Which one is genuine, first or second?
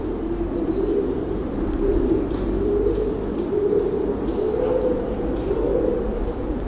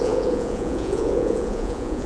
first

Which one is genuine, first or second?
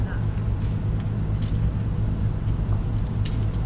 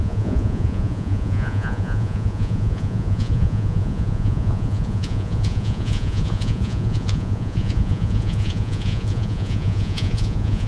first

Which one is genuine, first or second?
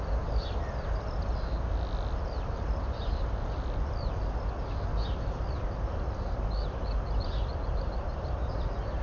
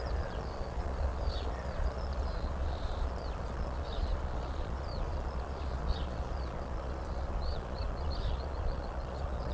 first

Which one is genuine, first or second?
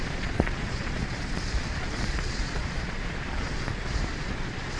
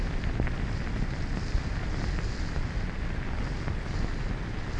second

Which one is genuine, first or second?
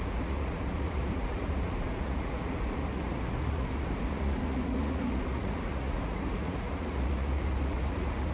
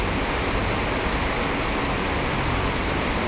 second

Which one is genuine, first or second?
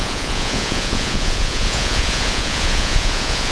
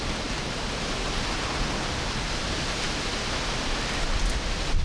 second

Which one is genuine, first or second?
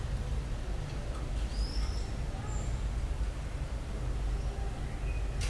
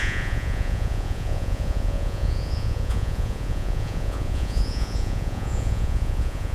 first